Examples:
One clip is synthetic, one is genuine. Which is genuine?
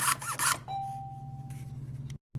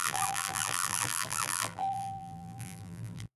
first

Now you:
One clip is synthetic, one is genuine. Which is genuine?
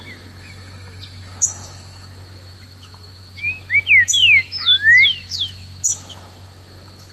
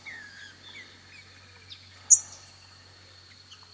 second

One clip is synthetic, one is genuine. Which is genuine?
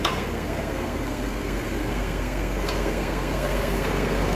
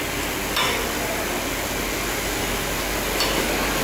second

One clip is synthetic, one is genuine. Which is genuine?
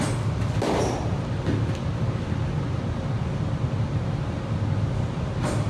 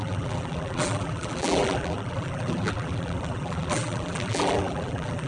first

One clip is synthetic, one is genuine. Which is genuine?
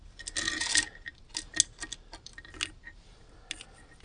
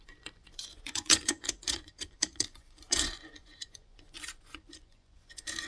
first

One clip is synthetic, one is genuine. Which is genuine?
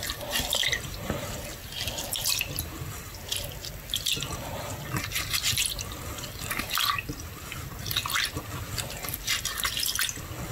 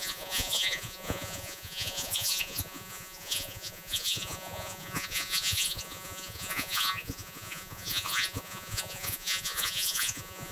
first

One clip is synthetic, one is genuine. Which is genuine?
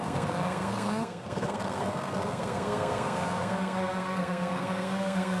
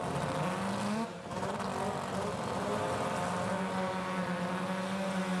second